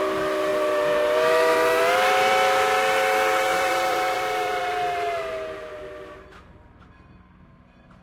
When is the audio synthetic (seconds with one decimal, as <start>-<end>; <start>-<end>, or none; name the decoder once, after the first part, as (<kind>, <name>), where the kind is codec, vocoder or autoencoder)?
3.5-4.6 (vocoder, BigVGAN v2)